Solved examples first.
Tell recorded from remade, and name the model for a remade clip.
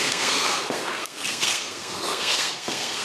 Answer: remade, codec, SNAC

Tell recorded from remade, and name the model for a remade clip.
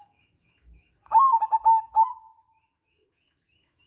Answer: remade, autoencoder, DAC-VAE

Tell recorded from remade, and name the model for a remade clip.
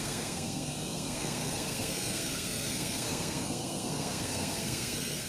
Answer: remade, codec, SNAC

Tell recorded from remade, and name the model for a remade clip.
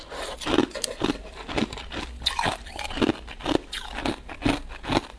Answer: recorded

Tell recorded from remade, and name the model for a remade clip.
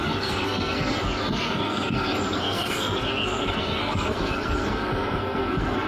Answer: remade, codec, SNAC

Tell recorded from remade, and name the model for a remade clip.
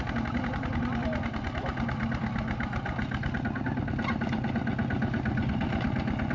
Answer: recorded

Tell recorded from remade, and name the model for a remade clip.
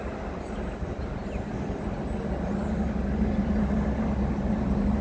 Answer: recorded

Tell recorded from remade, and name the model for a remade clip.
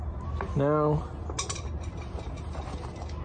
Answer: recorded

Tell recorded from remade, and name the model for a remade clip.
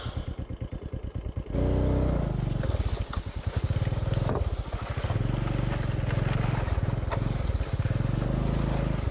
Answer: recorded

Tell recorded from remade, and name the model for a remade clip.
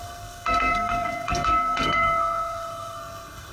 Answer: remade, codec, SNAC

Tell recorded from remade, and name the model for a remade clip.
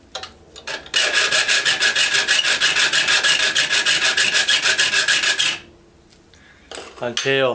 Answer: recorded